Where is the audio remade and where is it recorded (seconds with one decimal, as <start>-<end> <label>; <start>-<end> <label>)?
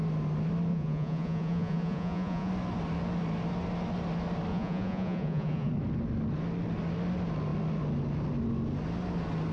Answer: 0.0-0.7 recorded; 0.7-2.5 remade; 2.5-4.5 recorded; 4.5-5.7 remade; 5.7-9.5 recorded